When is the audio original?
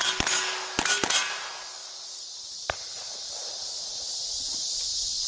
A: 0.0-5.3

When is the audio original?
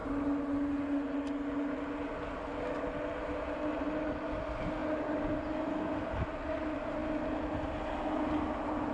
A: 0.0-8.9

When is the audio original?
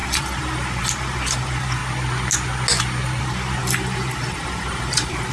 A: 1.8-3.2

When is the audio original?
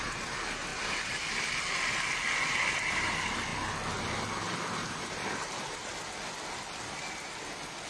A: 0.7-2.9; 3.5-4.6; 5.9-7.9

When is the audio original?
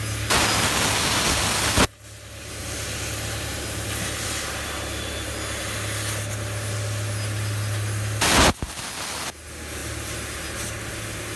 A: 0.0-2.6; 5.3-11.4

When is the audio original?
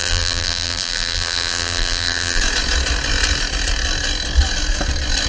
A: 2.4-5.3